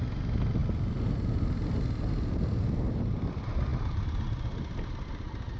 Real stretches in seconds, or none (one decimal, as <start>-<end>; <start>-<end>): 0.0-5.6